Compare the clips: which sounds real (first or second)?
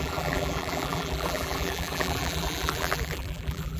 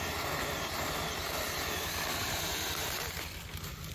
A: second